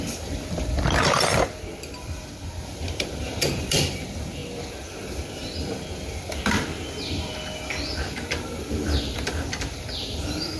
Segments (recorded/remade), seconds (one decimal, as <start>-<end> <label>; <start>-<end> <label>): 0.0-4.4 remade; 4.4-8.7 recorded; 8.7-10.6 remade